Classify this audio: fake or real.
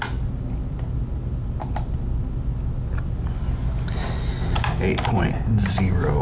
real